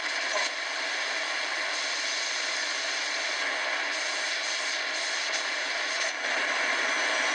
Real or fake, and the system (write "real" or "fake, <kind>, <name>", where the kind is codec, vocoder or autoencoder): real